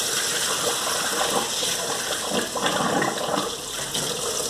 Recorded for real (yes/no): yes